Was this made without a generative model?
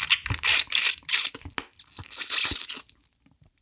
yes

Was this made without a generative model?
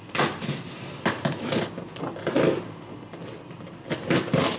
yes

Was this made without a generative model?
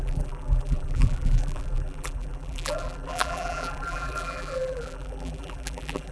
no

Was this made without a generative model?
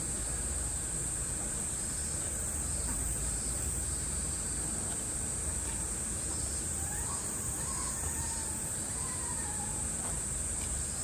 no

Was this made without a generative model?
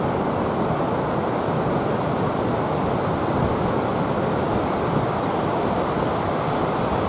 yes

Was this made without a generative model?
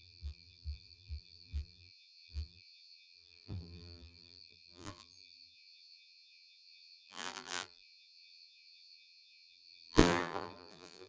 no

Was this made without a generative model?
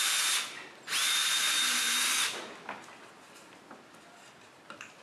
yes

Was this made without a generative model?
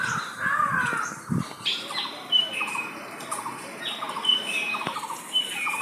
no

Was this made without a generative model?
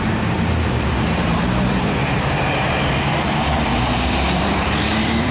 no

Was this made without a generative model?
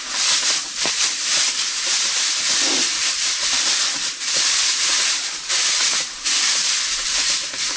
no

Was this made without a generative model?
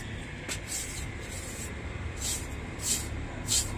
yes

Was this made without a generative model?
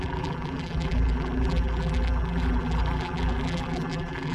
no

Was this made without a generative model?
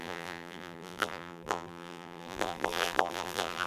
no